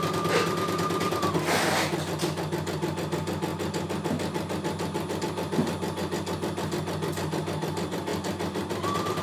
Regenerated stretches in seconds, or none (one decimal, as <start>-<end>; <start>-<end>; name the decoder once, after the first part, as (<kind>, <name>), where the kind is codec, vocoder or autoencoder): none